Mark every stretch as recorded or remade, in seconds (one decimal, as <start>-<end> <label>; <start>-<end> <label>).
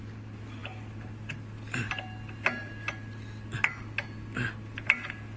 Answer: 0.0-5.4 recorded